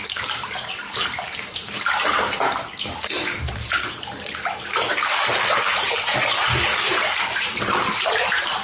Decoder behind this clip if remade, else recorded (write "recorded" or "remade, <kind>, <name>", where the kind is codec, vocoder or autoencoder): remade, vocoder, BigVGAN v2